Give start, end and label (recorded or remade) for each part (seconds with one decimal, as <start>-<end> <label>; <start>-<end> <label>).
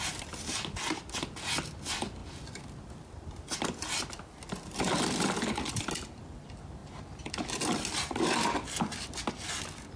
0.0-10.0 recorded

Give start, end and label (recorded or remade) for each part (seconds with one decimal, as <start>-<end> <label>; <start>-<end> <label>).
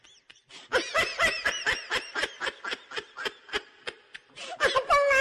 0.0-0.9 recorded; 0.9-2.5 remade; 2.5-5.2 recorded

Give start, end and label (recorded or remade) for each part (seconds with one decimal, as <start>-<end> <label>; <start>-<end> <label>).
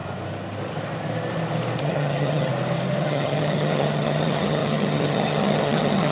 0.0-1.8 recorded; 1.8-2.5 remade; 2.5-3.0 recorded; 3.0-6.1 remade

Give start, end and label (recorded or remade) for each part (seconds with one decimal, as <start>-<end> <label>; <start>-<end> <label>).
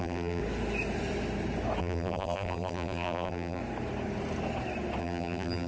0.0-0.4 remade; 0.4-1.8 recorded; 1.8-3.6 remade; 3.6-5.0 recorded; 5.0-5.7 remade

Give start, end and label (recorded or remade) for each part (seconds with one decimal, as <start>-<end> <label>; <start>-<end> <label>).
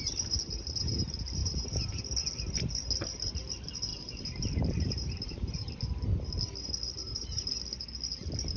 0.0-1.4 recorded; 1.4-2.0 remade; 2.0-3.9 recorded; 3.9-5.7 remade; 5.7-7.0 recorded; 7.0-7.5 remade; 7.5-8.6 recorded